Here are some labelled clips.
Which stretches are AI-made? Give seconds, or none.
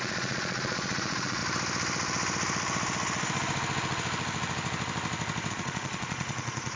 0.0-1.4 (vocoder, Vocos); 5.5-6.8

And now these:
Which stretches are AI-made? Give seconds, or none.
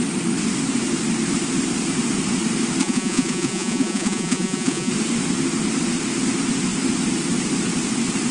2.8-4.9 (vocoder, Vocos)